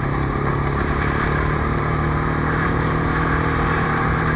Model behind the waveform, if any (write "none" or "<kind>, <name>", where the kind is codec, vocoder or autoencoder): vocoder, BigVGAN v2